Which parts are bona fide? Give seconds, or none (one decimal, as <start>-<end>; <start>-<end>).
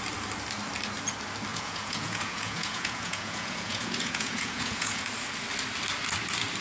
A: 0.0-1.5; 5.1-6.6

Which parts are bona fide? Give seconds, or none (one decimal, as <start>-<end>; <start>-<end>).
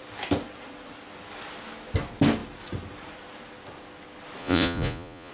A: 0.0-4.4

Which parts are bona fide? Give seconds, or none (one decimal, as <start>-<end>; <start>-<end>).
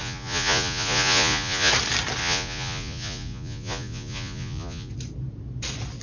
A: 1.7-2.2; 4.9-6.0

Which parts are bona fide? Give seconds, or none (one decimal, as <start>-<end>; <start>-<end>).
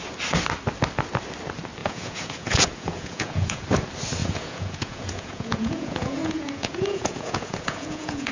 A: 0.0-1.8; 3.6-4.2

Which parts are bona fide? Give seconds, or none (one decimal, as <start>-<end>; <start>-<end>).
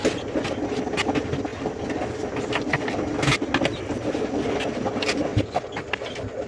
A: 0.0-6.5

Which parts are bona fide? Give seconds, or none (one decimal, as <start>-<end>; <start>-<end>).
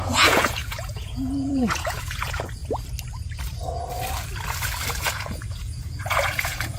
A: 2.6-4.9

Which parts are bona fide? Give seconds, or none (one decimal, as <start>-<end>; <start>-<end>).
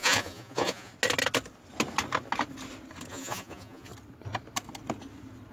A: 0.9-3.1; 3.9-5.5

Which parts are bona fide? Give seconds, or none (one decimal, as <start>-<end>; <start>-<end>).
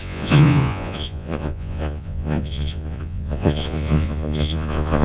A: none